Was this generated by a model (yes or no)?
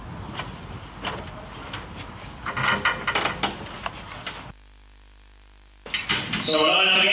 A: no